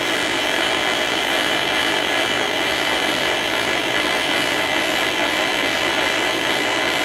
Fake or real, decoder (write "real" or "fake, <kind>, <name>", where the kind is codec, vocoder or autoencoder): fake, vocoder, BigVGAN v2